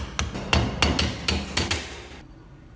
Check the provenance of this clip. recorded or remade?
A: recorded